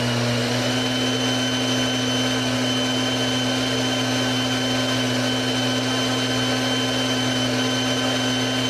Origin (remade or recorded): recorded